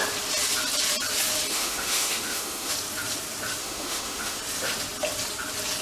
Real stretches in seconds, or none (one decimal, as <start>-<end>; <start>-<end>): 0.0-1.5; 2.7-3.6; 4.4-5.8

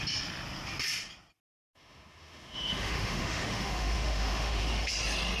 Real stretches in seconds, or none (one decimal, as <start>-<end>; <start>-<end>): 0.0-1.7; 4.9-5.4